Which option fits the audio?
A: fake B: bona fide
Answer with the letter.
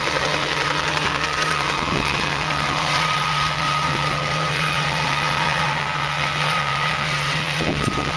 A